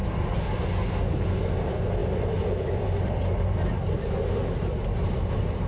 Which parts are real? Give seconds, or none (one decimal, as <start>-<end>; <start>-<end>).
none